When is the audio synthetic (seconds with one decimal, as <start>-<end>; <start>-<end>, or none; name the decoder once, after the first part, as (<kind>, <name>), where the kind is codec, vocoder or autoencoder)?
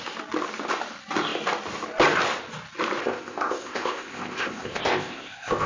3.0-5.7 (codec, ZipCodec)